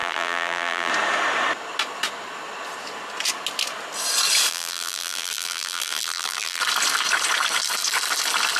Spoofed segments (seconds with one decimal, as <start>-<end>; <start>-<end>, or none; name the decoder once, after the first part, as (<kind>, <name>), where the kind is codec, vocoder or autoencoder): 0.0-0.9 (vocoder, BigVGAN v2); 4.5-6.6